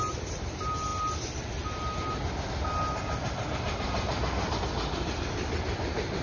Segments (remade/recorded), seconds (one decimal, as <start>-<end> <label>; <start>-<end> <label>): 0.0-6.2 recorded